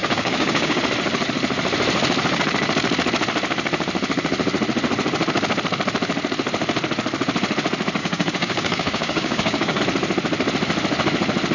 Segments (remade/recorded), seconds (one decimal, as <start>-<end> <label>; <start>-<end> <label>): 0.0-0.8 remade; 0.8-8.0 recorded; 8.0-9.8 remade; 9.8-11.5 recorded